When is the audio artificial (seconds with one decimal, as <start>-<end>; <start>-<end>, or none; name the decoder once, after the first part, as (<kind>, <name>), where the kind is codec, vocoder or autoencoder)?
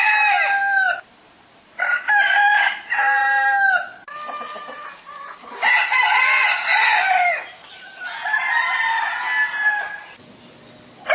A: none